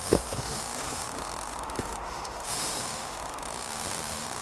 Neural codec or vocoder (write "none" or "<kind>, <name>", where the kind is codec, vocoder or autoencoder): autoencoder, DAC-VAE